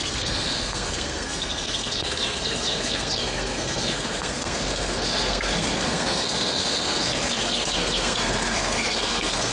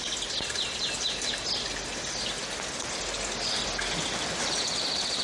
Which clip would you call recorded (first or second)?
second